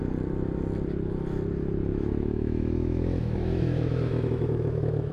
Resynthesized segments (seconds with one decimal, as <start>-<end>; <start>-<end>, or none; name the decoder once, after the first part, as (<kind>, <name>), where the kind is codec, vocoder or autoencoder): 1.9-5.1 (autoencoder, DAC-VAE)